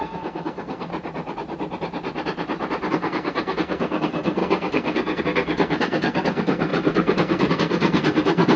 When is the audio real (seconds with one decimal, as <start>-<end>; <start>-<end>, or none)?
0.9-2.9